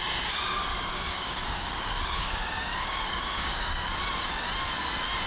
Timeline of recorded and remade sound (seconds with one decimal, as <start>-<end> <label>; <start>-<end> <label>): 0.0-0.7 recorded; 0.7-3.9 remade; 3.9-5.3 recorded